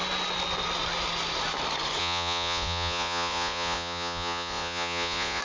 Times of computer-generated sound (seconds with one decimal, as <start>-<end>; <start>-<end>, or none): 2.0-5.4